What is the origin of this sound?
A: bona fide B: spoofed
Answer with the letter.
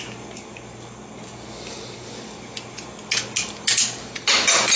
A